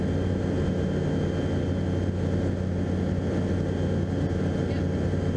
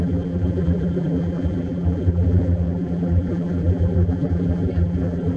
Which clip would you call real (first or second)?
first